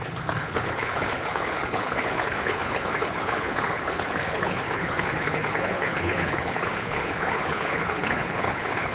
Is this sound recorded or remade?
remade